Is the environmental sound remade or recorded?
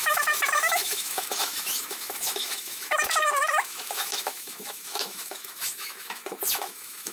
remade